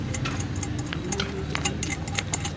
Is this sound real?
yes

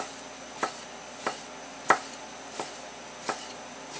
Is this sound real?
yes